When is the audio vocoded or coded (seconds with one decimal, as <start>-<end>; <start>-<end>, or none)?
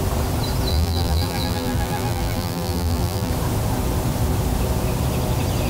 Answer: 0.7-3.3